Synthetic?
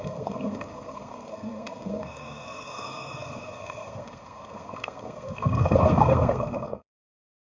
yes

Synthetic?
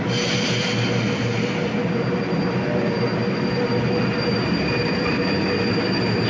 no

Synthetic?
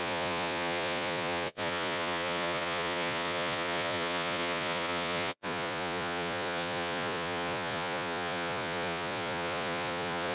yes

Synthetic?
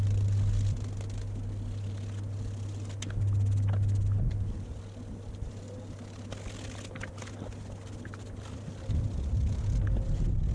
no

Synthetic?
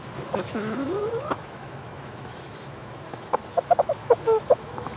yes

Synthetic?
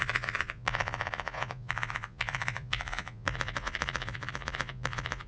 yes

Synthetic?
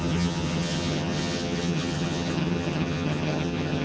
yes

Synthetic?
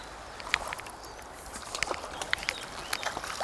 no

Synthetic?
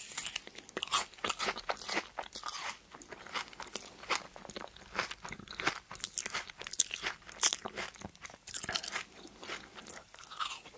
no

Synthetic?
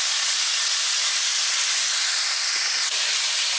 no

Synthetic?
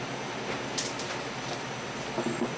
no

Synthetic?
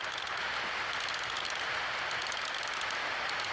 no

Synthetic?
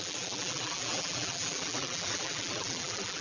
yes